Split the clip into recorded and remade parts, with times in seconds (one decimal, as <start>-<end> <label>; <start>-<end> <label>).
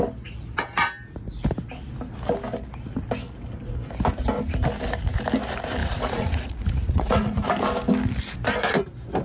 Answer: 0.0-5.8 recorded; 5.8-7.4 remade; 7.4-9.2 recorded